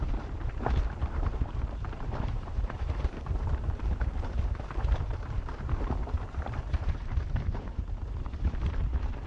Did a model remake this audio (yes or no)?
yes